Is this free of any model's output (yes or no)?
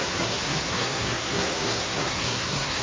no